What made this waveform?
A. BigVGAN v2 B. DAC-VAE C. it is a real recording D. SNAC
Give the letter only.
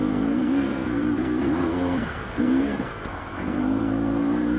D